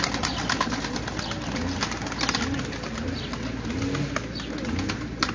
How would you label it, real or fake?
real